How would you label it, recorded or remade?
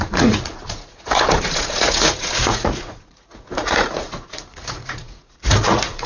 remade